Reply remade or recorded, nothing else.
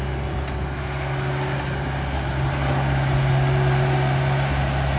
recorded